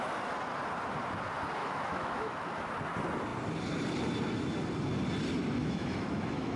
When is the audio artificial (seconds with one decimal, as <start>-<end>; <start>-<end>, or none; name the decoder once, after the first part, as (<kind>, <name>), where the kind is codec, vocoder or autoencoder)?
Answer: 1.6-2.7 (autoencoder, DAC-VAE); 5.6-6.6